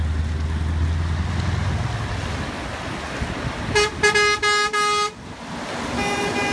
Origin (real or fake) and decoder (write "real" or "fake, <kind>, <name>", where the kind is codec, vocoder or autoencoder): real